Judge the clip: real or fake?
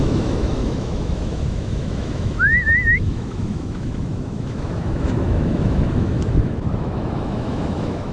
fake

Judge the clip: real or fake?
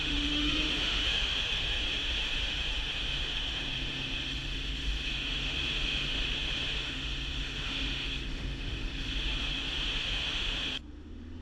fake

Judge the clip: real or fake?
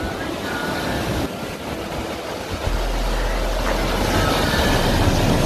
real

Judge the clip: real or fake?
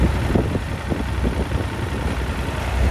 real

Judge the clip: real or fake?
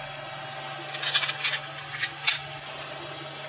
real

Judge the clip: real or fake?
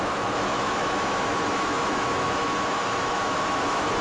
fake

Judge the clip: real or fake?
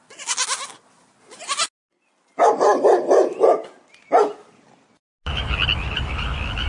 real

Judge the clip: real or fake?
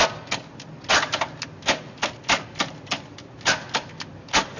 real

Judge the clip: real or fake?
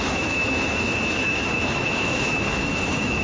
fake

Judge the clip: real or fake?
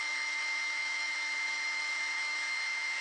fake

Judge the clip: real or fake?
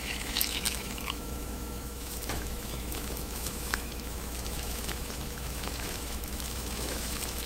fake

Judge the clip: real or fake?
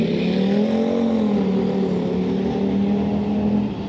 real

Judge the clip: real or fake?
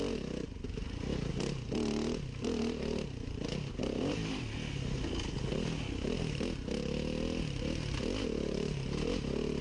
real